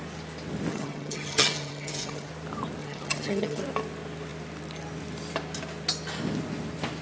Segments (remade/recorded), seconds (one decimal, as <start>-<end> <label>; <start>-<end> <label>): 0.0-0.7 recorded; 0.7-2.3 remade; 2.3-2.8 recorded; 2.8-3.6 remade; 3.6-7.0 recorded